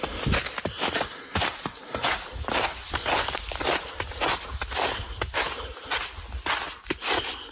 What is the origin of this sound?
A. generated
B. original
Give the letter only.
B